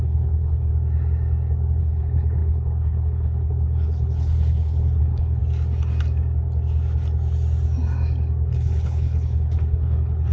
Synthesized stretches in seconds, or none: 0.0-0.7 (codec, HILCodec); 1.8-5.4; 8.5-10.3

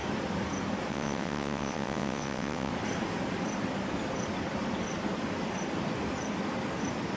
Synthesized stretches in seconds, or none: 0.9-2.7 (vocoder, WaveNeXt)

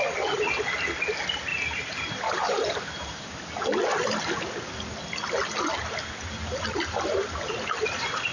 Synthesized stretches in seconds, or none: 1.5-3.6 (vocoder, BigVGAN v2)

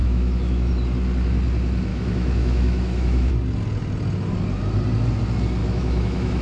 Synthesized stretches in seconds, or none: 0.0-0.7 (autoencoder, DAC-VAE); 1.9-3.3; 5.6-6.4

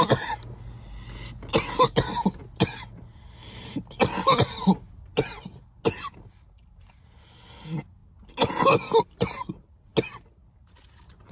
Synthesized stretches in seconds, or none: none

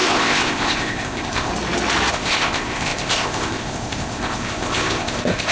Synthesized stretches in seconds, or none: 0.0-1.5 (codec, ZipCodec); 2.1-5.5

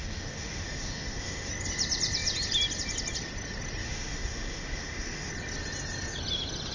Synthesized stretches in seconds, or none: 0.0-1.5 (autoencoder, DAC-VAE); 3.8-5.3

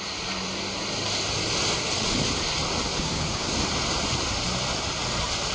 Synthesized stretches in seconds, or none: 3.0-3.5 (codec, DAC)